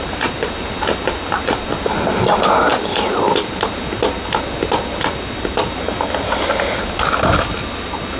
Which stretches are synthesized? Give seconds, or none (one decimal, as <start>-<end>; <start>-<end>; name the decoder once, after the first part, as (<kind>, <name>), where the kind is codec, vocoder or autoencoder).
2.7-3.5 (vocoder, BigVGAN v2)